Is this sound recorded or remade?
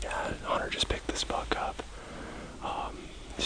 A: recorded